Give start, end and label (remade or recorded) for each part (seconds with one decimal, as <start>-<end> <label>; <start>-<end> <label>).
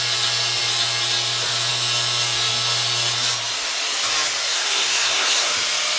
0.0-4.4 recorded; 4.4-5.5 remade; 5.5-6.0 recorded